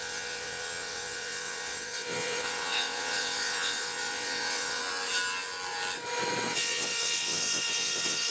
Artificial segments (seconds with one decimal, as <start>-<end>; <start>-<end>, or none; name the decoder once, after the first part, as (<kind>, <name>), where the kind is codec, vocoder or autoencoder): 0.0-4.8 (vocoder, WaveNeXt); 6.5-8.3